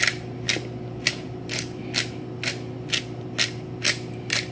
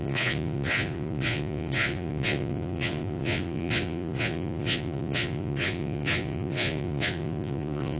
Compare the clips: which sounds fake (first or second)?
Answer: second